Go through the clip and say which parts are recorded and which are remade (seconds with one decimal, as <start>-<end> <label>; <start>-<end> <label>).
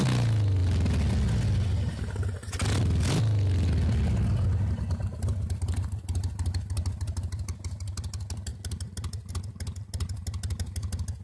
0.0-11.2 recorded